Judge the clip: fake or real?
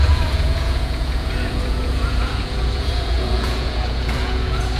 fake